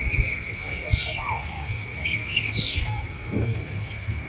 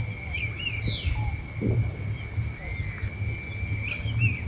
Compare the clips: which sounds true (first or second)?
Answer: second